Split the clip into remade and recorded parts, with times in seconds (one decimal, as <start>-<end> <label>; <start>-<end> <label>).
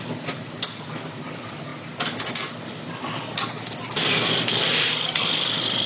0.0-5.9 recorded